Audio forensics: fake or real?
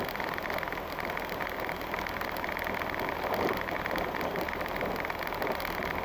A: real